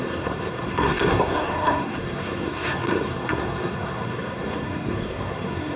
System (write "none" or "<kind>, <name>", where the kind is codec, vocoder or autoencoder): codec, SNAC